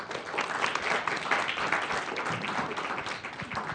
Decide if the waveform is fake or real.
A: real